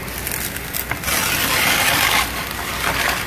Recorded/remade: recorded